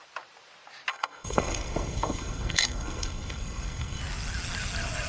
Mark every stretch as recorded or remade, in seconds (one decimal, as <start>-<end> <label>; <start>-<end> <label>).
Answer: 0.0-0.9 recorded; 0.9-4.0 remade; 4.0-5.1 recorded